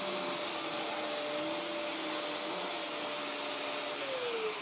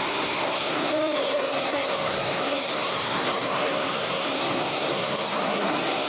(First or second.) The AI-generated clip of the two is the second